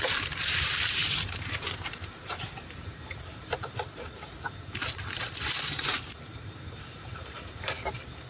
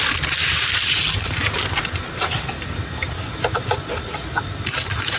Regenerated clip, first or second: first